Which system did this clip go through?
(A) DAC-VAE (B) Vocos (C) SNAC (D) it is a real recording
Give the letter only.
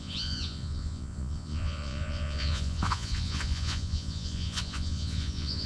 B